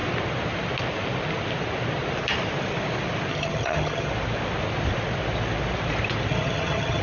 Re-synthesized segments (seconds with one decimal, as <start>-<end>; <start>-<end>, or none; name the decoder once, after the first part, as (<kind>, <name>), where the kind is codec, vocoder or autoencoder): 3.3-4.1 (vocoder, HiFi-GAN); 6.3-7.0

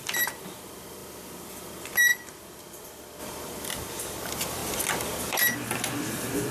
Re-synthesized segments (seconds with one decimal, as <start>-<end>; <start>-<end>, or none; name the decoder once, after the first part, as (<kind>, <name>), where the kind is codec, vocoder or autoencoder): 0.0-1.0 (vocoder, BigVGAN v2); 1.5-2.1; 3.2-4.6; 5.2-6.5

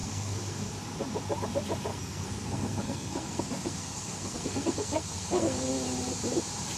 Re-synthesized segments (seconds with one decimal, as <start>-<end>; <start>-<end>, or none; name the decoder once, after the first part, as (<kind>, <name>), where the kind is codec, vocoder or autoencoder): 0.0-0.7 (codec, SNAC); 1.9-5.7